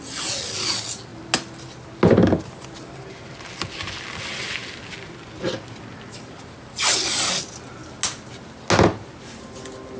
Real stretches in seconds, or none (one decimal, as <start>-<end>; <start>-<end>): 0.0-10.0